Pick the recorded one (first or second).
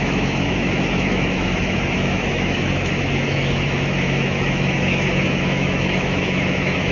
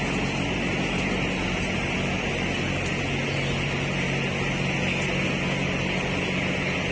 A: second